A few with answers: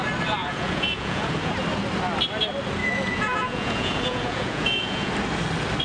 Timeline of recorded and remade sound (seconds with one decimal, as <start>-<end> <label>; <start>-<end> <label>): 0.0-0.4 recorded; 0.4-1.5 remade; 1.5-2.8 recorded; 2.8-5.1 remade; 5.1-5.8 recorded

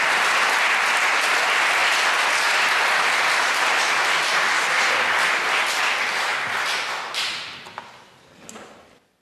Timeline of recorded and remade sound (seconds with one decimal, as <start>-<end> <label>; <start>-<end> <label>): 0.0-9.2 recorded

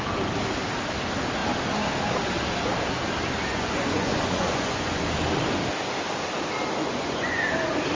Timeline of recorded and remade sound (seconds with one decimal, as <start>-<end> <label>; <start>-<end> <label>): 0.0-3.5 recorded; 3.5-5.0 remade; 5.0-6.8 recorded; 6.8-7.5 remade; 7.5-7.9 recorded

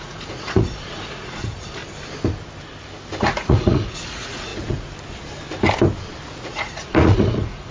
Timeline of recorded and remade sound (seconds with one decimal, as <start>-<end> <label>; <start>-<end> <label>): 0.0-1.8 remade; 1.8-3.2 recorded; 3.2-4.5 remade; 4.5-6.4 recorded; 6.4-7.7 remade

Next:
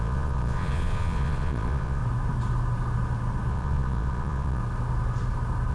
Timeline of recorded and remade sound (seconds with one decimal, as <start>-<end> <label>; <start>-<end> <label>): 0.0-2.0 remade; 2.0-3.5 recorded; 3.5-4.6 remade; 4.6-5.7 recorded

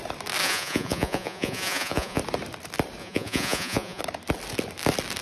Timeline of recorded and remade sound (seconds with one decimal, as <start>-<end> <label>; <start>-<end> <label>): 0.0-0.4 recorded; 0.4-2.2 remade; 2.2-3.0 recorded; 3.0-4.0 remade; 4.0-5.2 recorded